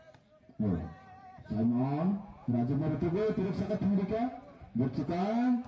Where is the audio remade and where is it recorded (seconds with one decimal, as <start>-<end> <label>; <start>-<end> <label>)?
0.0-2.4 recorded; 2.4-3.7 remade; 3.7-5.7 recorded